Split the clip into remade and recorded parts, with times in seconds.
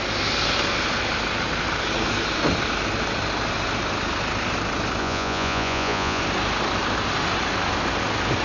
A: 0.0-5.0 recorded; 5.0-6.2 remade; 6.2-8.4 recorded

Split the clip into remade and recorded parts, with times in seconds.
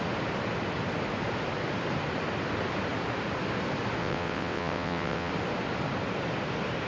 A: 0.0-4.0 recorded; 4.0-5.3 remade; 5.3-6.9 recorded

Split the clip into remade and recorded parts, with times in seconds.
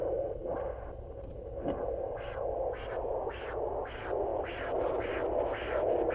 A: 0.0-6.1 recorded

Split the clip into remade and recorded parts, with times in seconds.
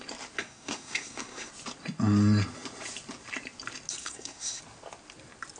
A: 0.0-0.4 recorded; 0.4-1.5 remade; 1.5-4.0 recorded; 4.0-4.6 remade; 4.6-5.6 recorded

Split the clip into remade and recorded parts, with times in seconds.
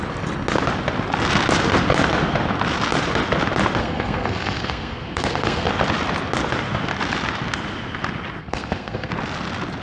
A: 0.0-3.8 recorded; 3.8-5.7 remade; 5.7-8.4 recorded; 8.4-9.1 remade; 9.1-9.8 recorded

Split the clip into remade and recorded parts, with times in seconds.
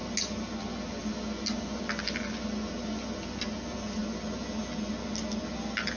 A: 0.0-6.0 recorded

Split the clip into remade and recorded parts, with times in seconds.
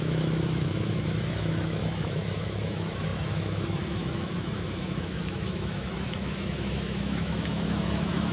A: 0.0-8.3 remade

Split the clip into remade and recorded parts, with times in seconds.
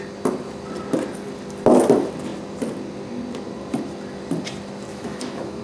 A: 0.0-4.9 recorded; 4.9-5.6 remade